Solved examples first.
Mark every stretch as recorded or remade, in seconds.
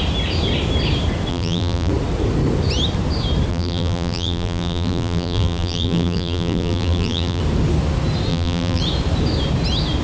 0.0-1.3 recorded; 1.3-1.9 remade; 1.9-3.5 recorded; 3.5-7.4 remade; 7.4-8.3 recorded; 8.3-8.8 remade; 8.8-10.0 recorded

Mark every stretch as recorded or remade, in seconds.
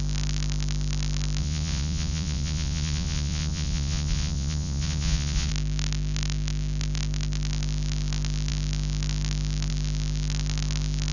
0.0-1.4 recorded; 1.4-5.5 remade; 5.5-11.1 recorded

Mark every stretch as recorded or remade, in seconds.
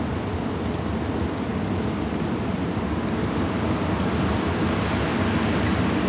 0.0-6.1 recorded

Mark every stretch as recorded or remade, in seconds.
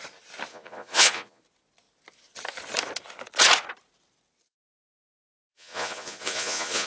0.0-0.5 recorded; 0.5-1.4 remade; 1.4-5.5 recorded; 5.5-6.9 remade